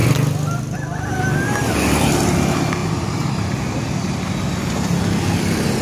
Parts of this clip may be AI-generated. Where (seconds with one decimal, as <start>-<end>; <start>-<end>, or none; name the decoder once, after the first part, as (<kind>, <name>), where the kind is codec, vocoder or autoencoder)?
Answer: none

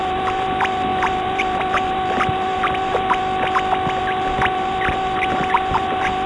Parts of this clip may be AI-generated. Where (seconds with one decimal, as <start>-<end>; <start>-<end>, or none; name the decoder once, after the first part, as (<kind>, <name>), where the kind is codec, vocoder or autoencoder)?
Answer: 0.0-3.2 (vocoder, BigVGAN v2); 4.0-6.3

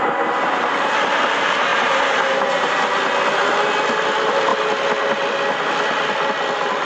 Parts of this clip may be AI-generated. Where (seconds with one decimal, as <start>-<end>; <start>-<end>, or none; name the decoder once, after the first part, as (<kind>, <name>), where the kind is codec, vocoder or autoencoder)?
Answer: 1.7-2.8 (vocoder, BigVGAN v2)

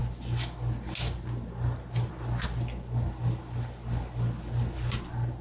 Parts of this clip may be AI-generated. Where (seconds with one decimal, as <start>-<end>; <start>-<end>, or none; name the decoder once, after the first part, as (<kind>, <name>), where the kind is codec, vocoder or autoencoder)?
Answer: none

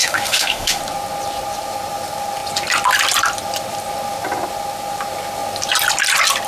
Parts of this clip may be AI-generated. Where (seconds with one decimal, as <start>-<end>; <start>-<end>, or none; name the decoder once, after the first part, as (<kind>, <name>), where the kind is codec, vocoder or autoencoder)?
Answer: 0.0-0.8 (autoencoder, DAC-VAE)

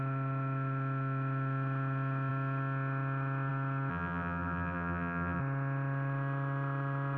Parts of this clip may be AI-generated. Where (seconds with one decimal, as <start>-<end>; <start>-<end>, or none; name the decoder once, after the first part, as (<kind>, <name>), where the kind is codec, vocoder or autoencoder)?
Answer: 3.9-5.4 (vocoder, BigVGAN v2)

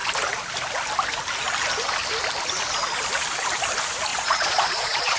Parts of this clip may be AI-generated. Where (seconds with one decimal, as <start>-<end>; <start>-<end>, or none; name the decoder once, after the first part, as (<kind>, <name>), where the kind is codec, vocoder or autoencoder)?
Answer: 4.1-5.2 (vocoder, Vocos)

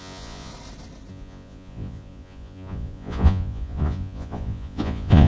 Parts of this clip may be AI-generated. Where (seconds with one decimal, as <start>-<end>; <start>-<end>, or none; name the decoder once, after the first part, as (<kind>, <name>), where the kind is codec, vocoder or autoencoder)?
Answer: 0.0-0.5 (vocoder, Vocos); 1.1-5.3